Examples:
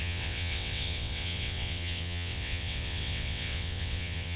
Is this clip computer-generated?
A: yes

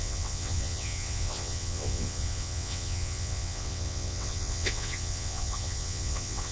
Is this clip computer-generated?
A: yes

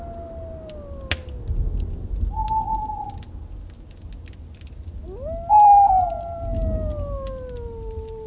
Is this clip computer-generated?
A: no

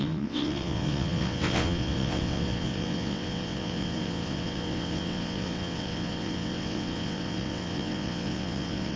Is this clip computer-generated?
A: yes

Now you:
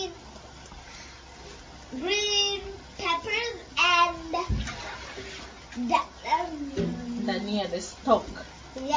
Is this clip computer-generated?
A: no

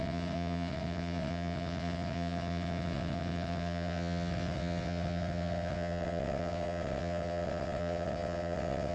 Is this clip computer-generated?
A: yes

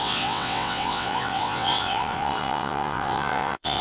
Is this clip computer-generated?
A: yes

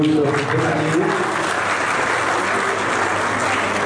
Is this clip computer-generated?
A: no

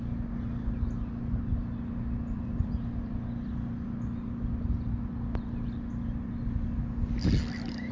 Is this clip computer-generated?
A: no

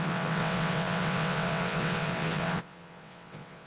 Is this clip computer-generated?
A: yes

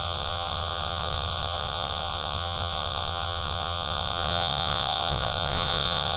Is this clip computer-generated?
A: yes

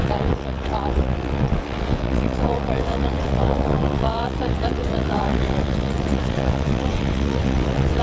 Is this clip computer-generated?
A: yes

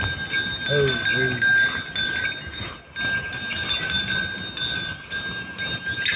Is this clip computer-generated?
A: no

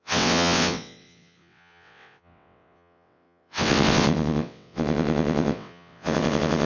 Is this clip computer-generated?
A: yes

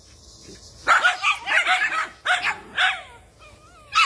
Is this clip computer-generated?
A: no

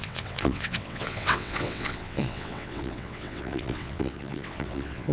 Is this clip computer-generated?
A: yes